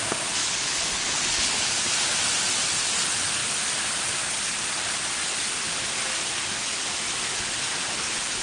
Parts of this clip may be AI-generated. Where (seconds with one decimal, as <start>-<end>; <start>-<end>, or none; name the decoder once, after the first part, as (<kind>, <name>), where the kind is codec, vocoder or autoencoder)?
0.4-1.7 (codec, HILCodec)